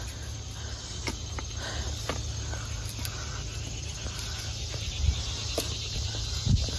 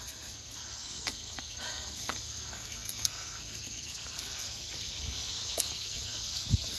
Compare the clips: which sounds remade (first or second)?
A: second